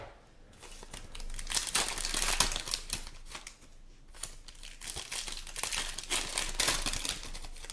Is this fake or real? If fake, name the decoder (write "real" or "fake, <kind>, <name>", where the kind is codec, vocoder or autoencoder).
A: real